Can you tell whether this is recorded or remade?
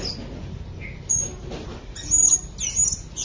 recorded